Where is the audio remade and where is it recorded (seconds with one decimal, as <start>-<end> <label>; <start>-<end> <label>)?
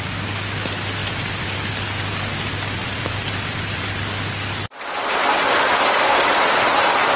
0.0-1.0 recorded; 1.0-1.7 remade; 1.7-2.8 recorded; 2.8-3.9 remade; 3.9-7.2 recorded